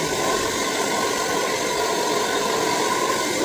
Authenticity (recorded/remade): remade